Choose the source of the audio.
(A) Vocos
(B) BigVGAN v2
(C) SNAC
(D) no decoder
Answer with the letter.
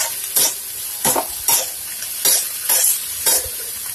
D